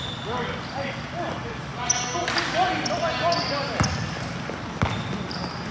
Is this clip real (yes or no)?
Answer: yes